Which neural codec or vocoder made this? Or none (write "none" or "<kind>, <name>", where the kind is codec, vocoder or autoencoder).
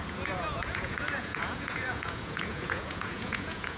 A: vocoder, Vocos